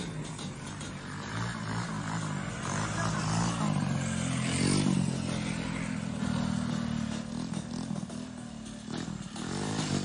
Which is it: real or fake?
real